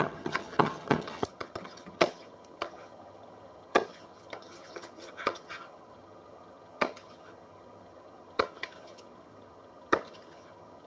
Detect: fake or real fake